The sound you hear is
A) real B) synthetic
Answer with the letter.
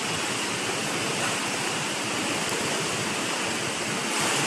A